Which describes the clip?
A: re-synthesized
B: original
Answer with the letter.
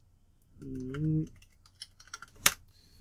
B